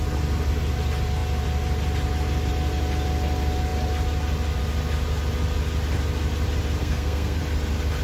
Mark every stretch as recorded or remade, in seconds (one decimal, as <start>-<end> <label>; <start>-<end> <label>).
0.0-6.8 recorded; 6.8-7.4 remade; 7.4-8.0 recorded